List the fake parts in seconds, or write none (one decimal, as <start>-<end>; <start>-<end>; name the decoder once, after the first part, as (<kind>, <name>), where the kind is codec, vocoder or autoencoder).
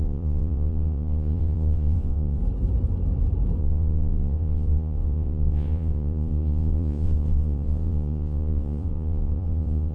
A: 0.0-2.4 (vocoder, Vocos); 3.6-9.9